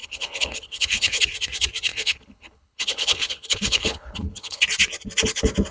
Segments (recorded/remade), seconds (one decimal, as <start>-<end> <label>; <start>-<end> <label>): 0.0-1.2 remade; 1.2-1.9 recorded; 1.9-4.6 remade; 4.6-5.7 recorded